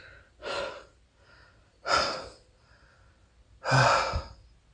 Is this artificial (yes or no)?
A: no